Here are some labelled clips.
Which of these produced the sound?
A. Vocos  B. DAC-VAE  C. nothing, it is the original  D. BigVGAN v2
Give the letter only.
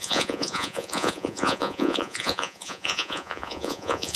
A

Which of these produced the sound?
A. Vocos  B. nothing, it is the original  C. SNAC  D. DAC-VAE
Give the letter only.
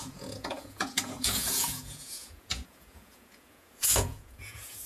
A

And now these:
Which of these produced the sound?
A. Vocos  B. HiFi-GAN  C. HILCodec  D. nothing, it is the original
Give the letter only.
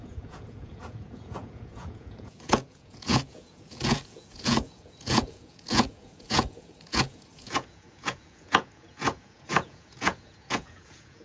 A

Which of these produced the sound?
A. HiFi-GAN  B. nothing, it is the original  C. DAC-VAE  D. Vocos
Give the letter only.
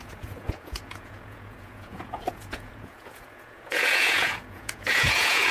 D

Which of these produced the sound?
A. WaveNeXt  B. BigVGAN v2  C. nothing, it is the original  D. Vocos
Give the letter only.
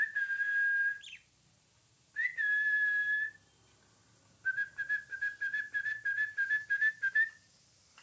C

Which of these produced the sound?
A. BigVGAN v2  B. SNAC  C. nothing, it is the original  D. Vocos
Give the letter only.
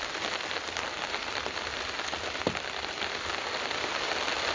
C